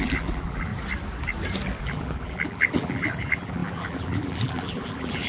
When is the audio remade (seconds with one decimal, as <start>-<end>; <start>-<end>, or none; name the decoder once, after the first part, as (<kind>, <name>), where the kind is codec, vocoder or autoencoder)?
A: 0.0-0.7 (vocoder, BigVGAN v2); 1.8-5.3